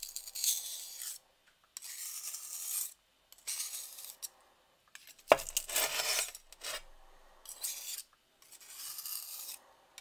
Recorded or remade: recorded